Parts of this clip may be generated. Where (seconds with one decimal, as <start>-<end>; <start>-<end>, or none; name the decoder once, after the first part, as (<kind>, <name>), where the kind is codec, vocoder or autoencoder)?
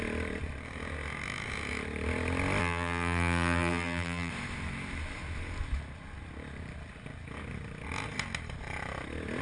2.6-4.3 (vocoder, BigVGAN v2)